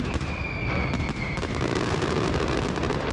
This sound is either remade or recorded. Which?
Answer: recorded